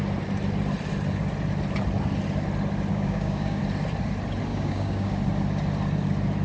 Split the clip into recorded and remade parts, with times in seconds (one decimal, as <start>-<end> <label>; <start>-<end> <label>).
0.0-2.9 recorded; 2.9-3.6 remade; 3.6-4.5 recorded; 4.5-5.2 remade; 5.2-6.4 recorded